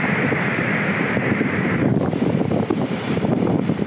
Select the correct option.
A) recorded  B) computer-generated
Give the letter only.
B